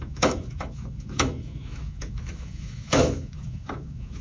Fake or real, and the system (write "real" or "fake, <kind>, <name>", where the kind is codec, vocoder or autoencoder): fake, autoencoder, DAC-VAE